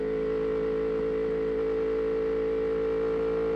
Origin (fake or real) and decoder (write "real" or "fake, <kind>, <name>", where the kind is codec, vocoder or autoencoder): real